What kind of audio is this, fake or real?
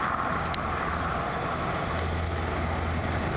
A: real